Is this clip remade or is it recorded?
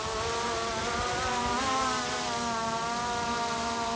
recorded